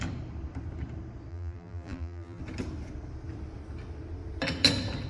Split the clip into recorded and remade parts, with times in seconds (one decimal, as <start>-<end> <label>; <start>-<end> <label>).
0.0-1.3 recorded; 1.3-2.4 remade; 2.4-5.1 recorded